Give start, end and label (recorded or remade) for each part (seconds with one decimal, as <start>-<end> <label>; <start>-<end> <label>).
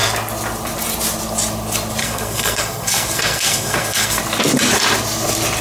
0.0-2.0 recorded; 2.0-4.2 remade; 4.2-5.6 recorded